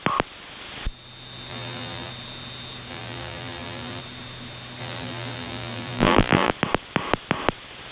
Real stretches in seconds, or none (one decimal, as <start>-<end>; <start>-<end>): 0.0-1.5; 2.1-2.9; 4.0-4.8; 6.5-7.9